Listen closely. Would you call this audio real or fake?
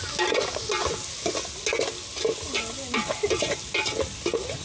real